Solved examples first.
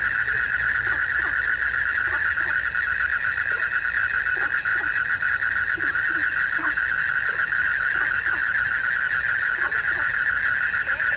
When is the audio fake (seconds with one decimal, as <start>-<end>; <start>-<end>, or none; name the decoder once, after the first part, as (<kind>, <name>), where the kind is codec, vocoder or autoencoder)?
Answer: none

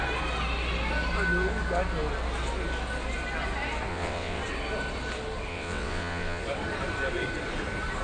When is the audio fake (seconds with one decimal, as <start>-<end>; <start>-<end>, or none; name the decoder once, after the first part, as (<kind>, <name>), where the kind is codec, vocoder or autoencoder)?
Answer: 3.9-4.4 (vocoder, WaveNeXt); 5.5-6.4

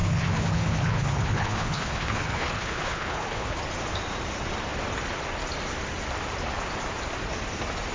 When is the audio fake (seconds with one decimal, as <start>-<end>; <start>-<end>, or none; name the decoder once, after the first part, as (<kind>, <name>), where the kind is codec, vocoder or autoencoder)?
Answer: 0.0-3.6 (codec, HILCodec)

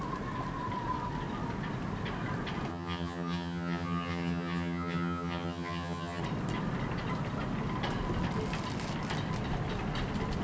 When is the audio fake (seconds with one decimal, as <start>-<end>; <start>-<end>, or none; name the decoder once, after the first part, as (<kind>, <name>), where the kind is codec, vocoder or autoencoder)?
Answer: 2.7-6.2 (vocoder, HiFi-GAN)